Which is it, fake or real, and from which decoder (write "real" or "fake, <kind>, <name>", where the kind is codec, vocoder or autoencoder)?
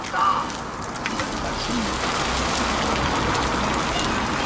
real